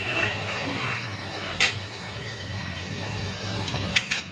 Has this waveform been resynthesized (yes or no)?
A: yes